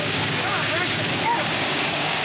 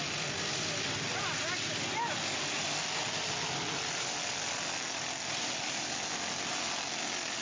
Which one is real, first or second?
second